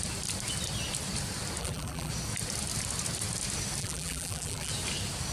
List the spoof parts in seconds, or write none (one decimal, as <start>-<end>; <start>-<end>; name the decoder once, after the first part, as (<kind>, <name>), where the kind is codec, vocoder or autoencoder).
1.6-2.1 (vocoder, BigVGAN v2); 3.8-4.7